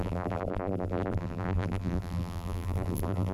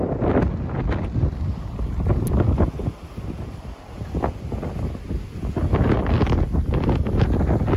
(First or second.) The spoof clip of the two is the first